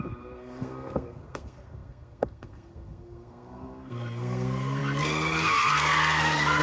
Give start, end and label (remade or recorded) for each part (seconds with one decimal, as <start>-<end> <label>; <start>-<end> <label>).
0.0-6.6 remade